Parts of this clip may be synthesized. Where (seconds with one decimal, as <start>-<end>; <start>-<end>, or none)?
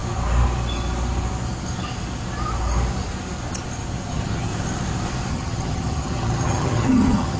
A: 4.1-4.5; 5.3-7.4